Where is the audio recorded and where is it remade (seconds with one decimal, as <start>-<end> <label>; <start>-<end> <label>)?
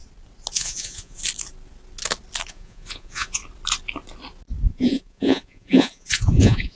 0.0-0.5 recorded; 0.5-1.2 remade; 1.2-2.5 recorded; 2.5-3.4 remade; 3.4-4.7 recorded; 4.7-6.8 remade